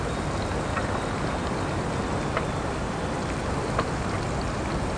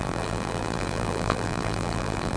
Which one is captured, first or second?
first